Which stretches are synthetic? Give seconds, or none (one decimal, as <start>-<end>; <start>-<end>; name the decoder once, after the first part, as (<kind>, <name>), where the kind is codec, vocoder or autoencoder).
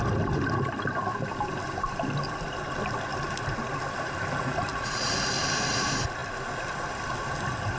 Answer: 4.7-5.3 (vocoder, Vocos)